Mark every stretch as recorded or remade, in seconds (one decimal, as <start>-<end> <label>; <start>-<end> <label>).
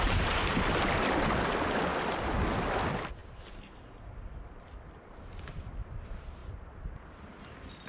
0.0-7.9 recorded